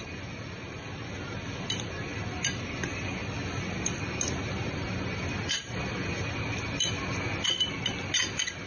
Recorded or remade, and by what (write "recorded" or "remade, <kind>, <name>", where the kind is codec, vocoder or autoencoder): recorded